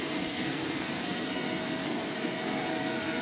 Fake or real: fake